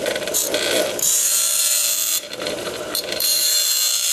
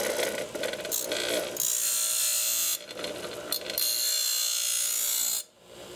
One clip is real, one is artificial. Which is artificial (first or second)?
first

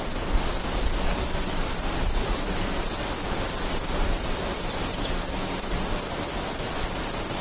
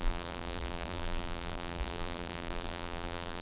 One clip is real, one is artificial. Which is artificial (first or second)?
second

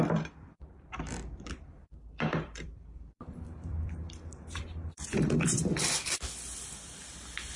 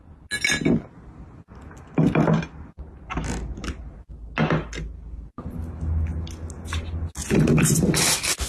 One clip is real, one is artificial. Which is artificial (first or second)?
first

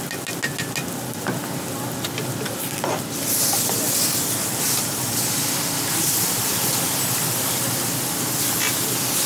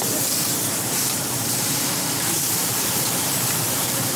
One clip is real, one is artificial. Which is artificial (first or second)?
second